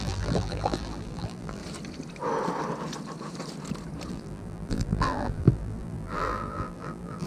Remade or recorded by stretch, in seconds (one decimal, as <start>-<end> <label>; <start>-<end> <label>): 0.0-1.6 remade; 1.6-4.1 recorded; 4.1-7.3 remade